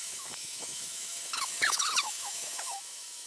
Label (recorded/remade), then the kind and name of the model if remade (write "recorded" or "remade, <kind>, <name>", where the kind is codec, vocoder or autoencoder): remade, autoencoder, DAC-VAE